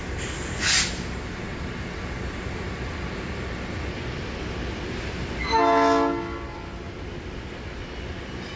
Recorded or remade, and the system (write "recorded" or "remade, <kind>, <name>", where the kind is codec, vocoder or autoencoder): recorded